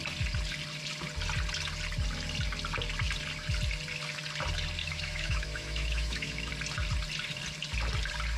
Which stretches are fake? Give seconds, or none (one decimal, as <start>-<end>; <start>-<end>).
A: 4.8-6.5